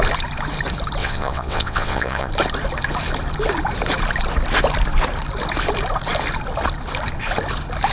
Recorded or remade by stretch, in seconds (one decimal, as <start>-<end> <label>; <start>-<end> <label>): 0.0-1.0 recorded; 1.0-2.3 remade; 2.3-7.9 recorded